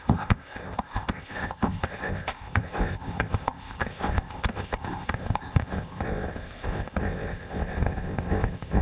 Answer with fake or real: fake